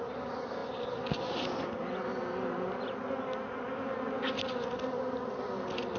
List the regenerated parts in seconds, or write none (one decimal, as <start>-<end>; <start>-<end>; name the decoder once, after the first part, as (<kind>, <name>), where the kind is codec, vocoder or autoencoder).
none